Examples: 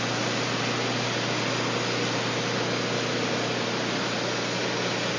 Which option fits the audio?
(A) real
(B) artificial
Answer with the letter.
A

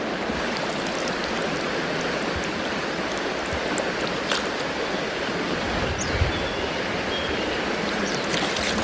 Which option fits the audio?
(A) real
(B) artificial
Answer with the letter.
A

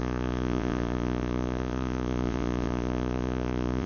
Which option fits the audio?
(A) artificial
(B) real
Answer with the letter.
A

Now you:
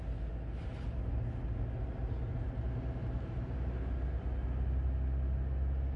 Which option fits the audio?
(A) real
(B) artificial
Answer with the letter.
A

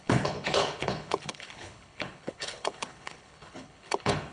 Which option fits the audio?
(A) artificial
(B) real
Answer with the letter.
A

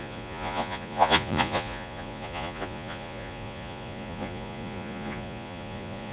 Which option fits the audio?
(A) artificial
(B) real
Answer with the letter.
A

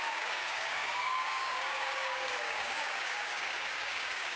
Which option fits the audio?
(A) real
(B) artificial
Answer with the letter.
B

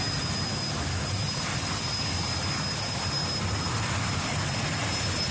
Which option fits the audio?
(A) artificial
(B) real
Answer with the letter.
B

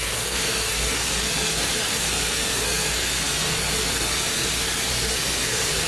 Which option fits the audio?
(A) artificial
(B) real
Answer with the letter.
A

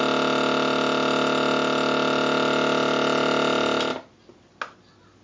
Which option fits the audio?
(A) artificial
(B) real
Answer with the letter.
B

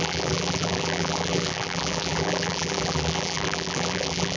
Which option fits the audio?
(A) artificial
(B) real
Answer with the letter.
A